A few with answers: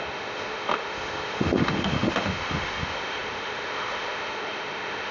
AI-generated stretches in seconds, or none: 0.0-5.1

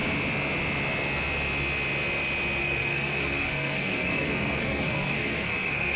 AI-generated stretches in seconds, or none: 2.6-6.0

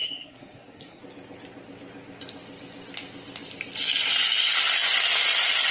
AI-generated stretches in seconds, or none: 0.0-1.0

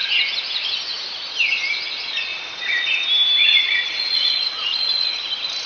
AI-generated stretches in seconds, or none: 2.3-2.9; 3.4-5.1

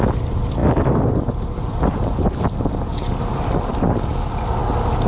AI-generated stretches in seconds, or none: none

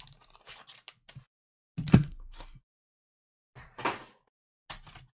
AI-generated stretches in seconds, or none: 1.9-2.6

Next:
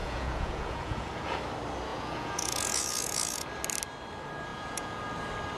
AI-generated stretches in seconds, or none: 0.0-1.4; 1.9-3.5; 4.5-5.0